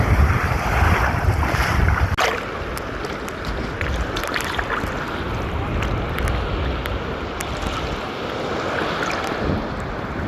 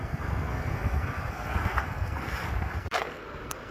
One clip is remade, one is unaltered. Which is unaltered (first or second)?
first